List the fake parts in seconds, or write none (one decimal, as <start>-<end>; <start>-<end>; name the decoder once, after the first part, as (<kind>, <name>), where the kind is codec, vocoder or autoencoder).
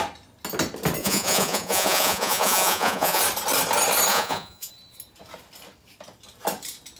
1.0-3.2 (vocoder, Vocos); 4.1-4.7